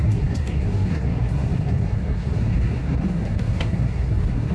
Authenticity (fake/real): fake